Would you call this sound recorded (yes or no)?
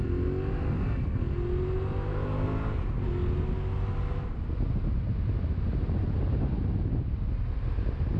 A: yes